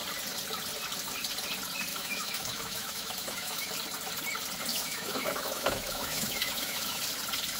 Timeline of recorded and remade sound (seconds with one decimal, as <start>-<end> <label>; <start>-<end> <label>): 0.0-1.9 recorded; 1.9-3.7 remade; 3.7-4.7 recorded; 4.7-7.0 remade; 7.0-7.6 recorded